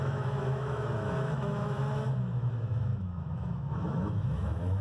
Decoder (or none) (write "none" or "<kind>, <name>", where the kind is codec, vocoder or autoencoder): autoencoder, DAC-VAE